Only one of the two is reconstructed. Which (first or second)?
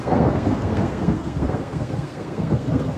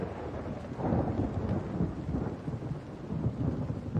first